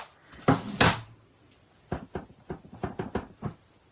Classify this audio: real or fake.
real